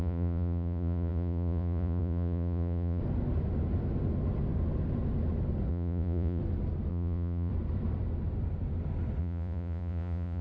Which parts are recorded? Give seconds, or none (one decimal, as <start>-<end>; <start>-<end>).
3.0-5.7; 6.4-6.9; 7.5-9.2